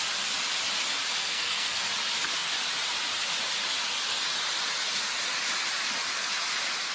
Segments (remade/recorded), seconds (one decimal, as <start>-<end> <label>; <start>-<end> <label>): 0.0-1.2 recorded; 1.2-1.8 remade; 1.8-6.9 recorded